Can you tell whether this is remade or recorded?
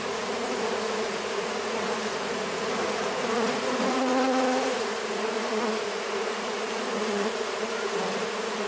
remade